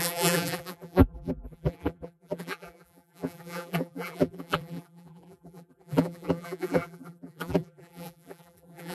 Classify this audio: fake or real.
fake